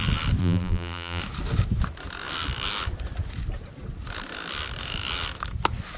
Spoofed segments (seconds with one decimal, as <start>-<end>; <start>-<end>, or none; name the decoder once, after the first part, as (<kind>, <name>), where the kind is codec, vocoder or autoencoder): 0.4-1.2 (vocoder, BigVGAN v2)